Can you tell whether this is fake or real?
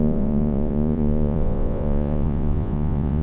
fake